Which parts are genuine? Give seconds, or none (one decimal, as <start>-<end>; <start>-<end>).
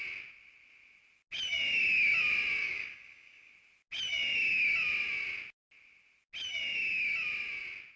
0.0-2.6; 3.5-8.0